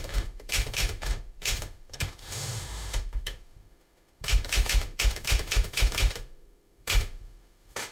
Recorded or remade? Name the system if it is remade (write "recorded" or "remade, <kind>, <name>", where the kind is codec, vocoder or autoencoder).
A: remade, autoencoder, DAC-VAE